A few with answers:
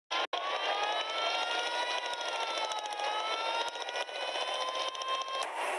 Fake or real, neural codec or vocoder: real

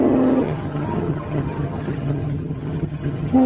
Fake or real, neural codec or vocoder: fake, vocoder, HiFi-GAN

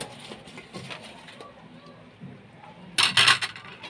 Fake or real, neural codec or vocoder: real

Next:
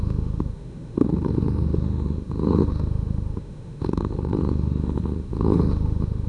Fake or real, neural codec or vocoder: fake, autoencoder, DAC-VAE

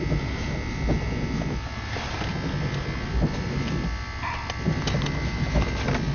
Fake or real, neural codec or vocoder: real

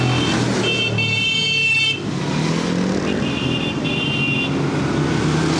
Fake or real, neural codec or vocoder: real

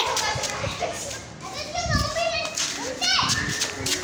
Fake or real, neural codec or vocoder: real